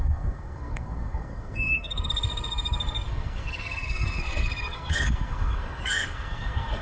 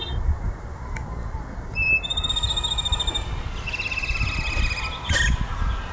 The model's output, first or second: first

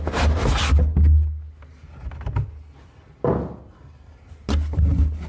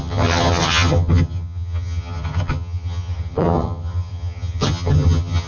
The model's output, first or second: second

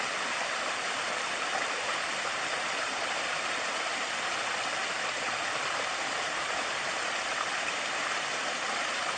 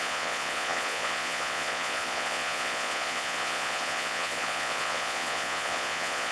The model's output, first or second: second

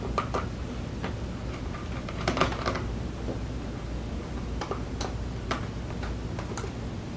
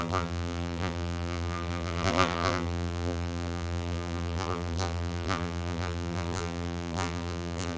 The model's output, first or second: second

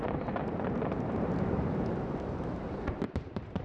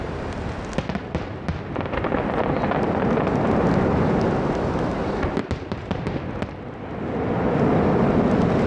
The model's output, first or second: first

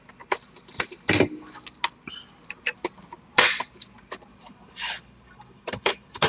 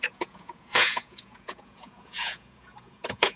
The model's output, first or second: second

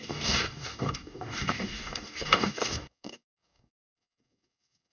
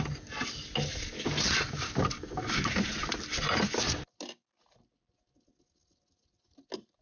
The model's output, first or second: first